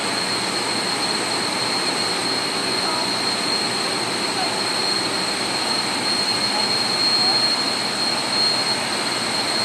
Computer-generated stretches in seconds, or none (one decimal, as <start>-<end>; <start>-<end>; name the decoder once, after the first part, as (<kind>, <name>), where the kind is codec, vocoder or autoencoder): 0.0-0.5 (vocoder, Vocos); 2.6-3.2